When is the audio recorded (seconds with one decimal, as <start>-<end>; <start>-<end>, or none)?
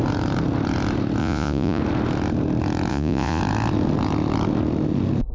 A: 0.0-1.2; 1.8-2.9; 3.4-5.3